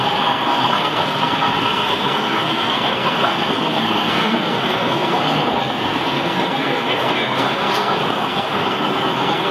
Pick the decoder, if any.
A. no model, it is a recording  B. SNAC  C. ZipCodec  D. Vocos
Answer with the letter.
B